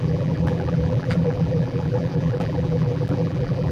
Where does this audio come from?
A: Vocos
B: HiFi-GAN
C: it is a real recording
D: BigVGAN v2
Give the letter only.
D